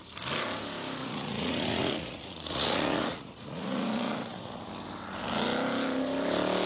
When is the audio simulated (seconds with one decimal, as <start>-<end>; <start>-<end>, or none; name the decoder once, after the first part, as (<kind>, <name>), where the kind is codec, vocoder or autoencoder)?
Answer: 1.0-4.6 (vocoder, Vocos)